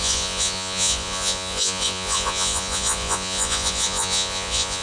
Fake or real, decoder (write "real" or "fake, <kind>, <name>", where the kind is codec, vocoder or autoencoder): fake, vocoder, Vocos